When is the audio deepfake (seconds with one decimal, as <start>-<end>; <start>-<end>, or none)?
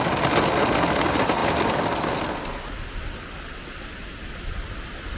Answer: none